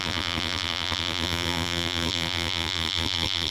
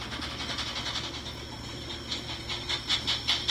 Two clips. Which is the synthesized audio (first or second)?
first